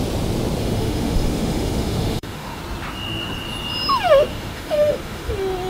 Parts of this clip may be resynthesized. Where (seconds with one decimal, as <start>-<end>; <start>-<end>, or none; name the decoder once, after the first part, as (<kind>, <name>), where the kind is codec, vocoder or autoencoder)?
0.6-2.6 (autoencoder, DAC-VAE); 4.3-5.3